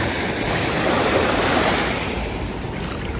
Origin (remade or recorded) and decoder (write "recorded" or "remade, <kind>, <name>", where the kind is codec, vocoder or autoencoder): remade, vocoder, BigVGAN v2